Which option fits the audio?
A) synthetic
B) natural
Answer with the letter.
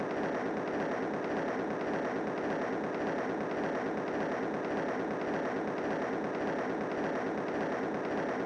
B